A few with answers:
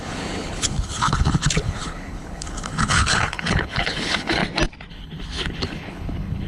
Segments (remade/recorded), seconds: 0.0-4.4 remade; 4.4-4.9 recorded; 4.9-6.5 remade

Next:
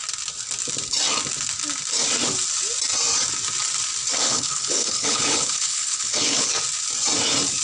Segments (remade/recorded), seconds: 0.0-4.2 recorded; 4.2-6.5 remade; 6.5-7.6 recorded